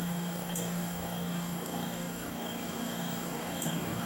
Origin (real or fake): fake